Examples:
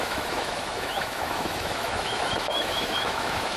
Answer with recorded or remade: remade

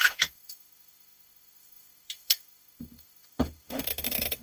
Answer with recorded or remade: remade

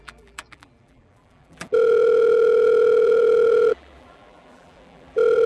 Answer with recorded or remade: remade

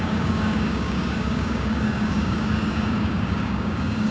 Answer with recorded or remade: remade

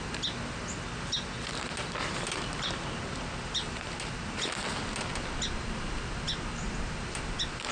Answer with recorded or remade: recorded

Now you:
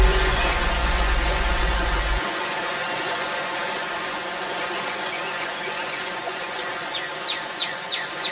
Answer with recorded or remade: remade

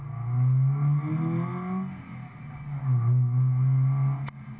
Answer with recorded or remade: recorded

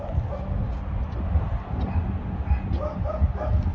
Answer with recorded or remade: recorded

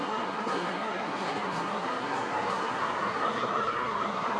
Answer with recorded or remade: remade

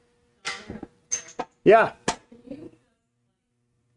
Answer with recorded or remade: recorded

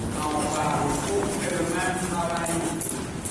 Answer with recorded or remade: recorded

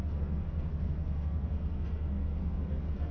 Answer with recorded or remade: remade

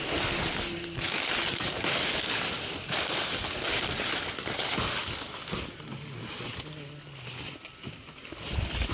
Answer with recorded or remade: recorded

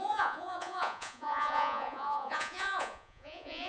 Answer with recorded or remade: remade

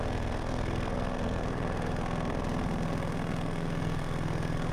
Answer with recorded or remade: remade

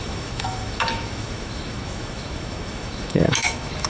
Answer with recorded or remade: remade